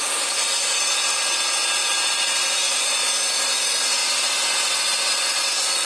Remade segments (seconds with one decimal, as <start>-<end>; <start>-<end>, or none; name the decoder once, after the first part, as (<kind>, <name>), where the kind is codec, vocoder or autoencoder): none